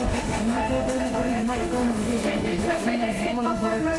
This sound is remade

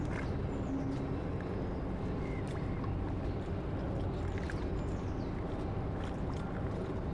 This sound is recorded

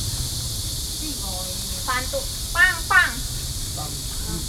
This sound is recorded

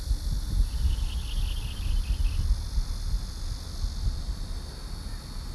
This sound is recorded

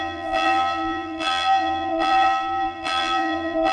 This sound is remade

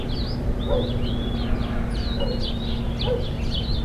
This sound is recorded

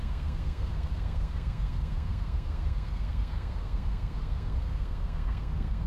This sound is remade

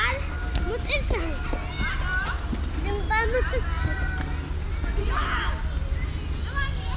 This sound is recorded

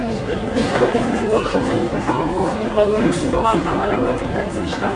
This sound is remade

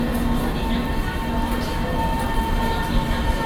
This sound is recorded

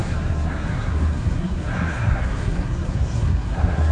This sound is remade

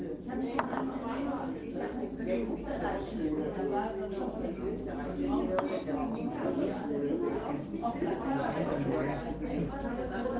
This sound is recorded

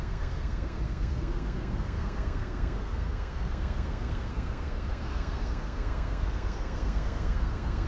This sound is remade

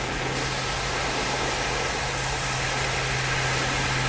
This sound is recorded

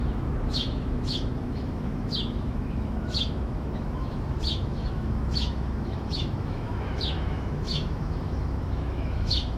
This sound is remade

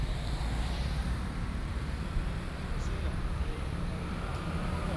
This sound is remade